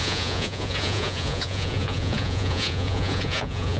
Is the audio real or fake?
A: fake